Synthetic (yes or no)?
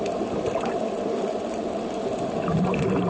no